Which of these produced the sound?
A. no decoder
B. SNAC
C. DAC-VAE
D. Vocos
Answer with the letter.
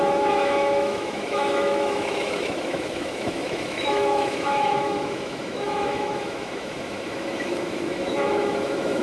C